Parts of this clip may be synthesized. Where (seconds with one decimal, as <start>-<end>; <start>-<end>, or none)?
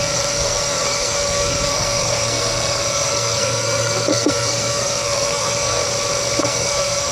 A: 0.0-5.8; 6.4-7.1